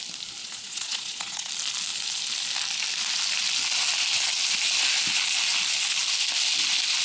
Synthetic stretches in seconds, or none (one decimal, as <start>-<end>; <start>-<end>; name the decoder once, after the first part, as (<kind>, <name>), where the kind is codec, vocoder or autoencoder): 0.4-1.5 (vocoder, Vocos)